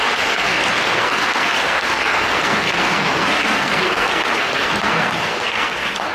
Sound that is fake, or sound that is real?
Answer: fake